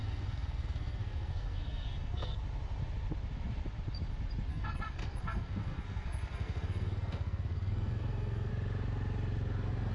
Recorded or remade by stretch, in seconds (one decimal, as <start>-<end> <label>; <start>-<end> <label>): 0.0-2.4 remade; 2.4-4.5 recorded; 4.5-8.5 remade; 8.5-9.9 recorded